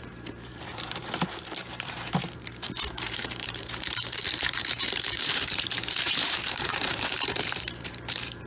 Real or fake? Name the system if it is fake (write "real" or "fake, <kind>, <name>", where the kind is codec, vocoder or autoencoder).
fake, vocoder, BigVGAN v2